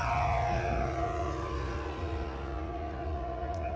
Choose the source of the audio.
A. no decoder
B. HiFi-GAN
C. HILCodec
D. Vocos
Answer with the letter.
D